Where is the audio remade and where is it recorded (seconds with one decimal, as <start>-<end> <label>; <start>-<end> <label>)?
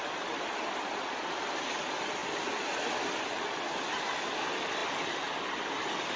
0.0-6.2 recorded